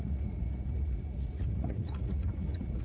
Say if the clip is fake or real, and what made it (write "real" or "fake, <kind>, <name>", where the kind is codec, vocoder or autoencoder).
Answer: fake, vocoder, Vocos